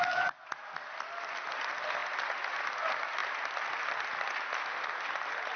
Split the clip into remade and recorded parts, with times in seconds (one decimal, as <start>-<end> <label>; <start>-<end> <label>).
0.0-5.6 recorded